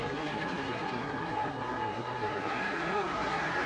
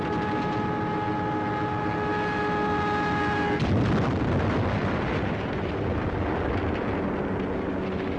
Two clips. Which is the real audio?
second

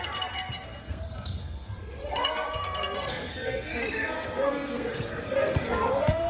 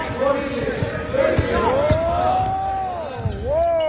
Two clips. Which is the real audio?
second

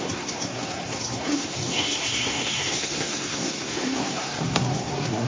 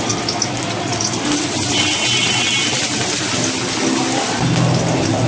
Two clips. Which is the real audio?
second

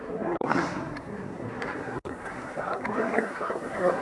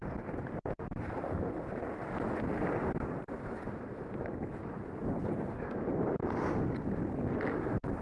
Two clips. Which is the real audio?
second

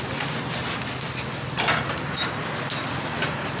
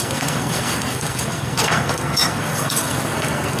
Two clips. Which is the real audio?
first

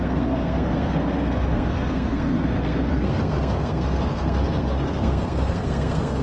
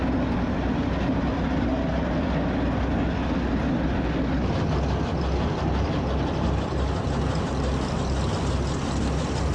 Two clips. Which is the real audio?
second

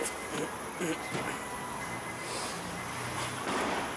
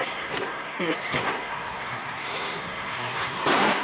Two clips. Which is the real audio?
first